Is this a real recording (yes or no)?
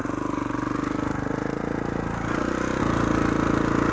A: yes